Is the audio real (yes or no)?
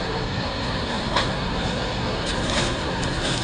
no